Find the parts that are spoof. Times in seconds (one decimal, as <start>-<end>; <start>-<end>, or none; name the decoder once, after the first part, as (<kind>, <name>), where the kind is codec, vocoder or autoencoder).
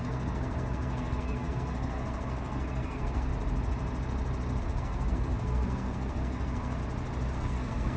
0.0-3.3 (codec, SNAC); 4.6-6.8; 7.3-8.0